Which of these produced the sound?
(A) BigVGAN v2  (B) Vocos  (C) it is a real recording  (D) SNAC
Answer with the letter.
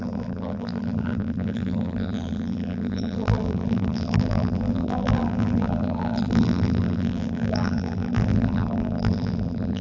A